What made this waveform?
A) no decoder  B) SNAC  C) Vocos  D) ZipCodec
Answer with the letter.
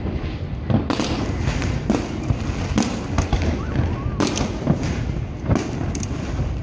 A